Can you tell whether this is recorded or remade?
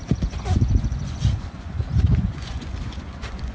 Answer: remade